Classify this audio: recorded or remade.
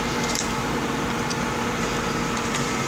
remade